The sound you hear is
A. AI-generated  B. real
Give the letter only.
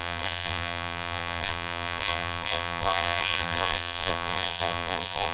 A